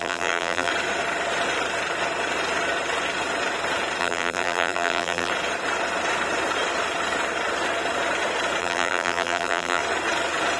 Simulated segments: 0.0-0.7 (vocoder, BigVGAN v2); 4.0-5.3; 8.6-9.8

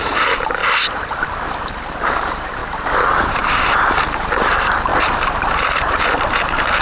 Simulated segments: 0.0-0.6 (vocoder, BigVGAN v2); 1.2-2.6; 3.3-6.8

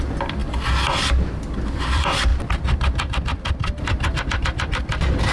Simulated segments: 0.0-0.4 (vocoder, BigVGAN v2); 1.9-2.3; 3.8-5.3

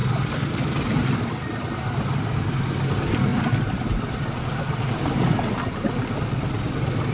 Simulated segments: 0.0-2.2 (vocoder, BigVGAN v2); 3.3-5.0

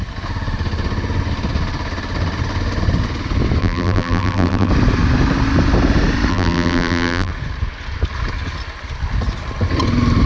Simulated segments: 3.6-4.7 (vocoder, BigVGAN v2); 6.3-7.3

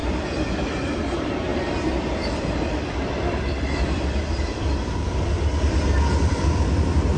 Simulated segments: 0.0-0.9 (vocoder, BigVGAN v2); 1.5-5.8

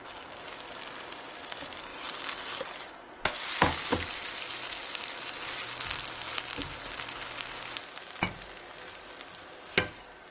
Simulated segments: none

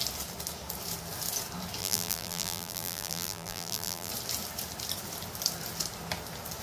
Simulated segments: 1.8-4.1 (vocoder, BigVGAN v2)